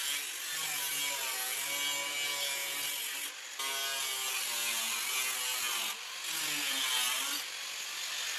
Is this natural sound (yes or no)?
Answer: yes